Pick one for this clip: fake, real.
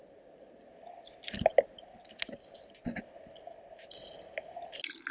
real